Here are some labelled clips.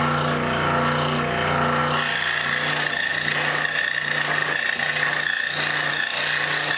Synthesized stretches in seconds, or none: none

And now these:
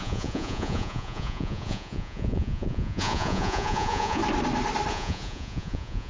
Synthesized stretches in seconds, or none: 0.0-4.2 (vocoder, Vocos); 4.9-6.1

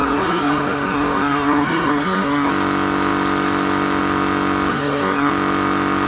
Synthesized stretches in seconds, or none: 0.0-2.5 (codec, SNAC); 4.7-5.3

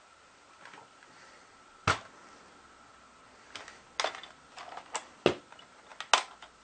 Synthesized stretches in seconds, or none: none

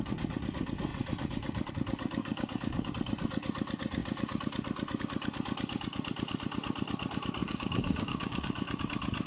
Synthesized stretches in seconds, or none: 2.2-2.9 (codec, DAC); 7.4-8.8

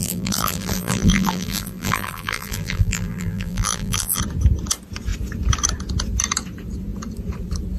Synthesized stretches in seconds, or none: 0.0-4.2 (vocoder, BigVGAN v2)